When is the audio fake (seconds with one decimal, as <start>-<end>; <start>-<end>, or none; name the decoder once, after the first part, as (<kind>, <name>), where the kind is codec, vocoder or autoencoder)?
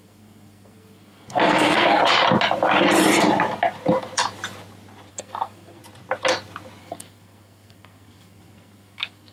0.0-2.0 (codec, SNAC); 5.1-5.8; 6.8-9.3